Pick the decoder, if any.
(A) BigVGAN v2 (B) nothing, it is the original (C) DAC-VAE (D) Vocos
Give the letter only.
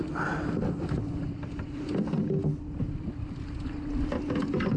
B